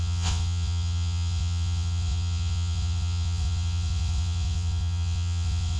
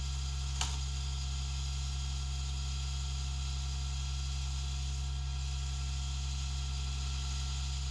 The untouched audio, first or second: second